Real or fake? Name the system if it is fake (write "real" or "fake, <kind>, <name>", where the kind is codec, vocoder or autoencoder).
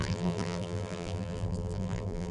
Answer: fake, vocoder, BigVGAN v2